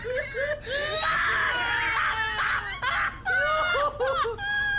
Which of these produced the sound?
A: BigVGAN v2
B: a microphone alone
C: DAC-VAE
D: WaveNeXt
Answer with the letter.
B